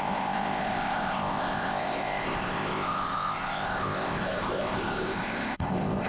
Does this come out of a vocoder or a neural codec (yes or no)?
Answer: yes